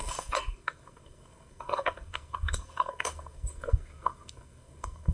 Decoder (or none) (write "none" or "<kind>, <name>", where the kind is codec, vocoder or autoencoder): codec, SNAC